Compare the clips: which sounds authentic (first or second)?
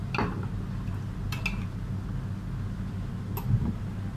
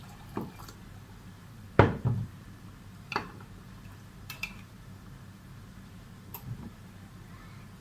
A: first